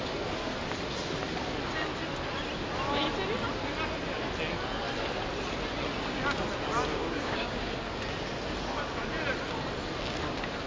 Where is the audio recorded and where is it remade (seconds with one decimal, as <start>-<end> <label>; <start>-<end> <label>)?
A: 0.0-6.9 recorded; 6.9-7.7 remade; 7.7-10.7 recorded